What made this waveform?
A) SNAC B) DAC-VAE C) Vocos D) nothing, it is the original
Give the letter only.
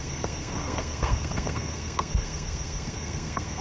A